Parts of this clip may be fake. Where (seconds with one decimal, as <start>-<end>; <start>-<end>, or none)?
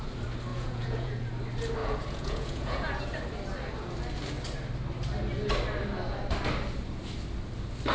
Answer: 0.5-1.3; 1.8-3.0